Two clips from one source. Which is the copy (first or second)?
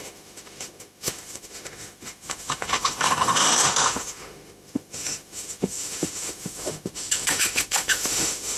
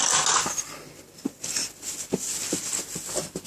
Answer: first